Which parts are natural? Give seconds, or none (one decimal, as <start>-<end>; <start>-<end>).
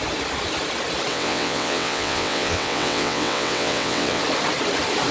0.0-1.1; 4.2-5.1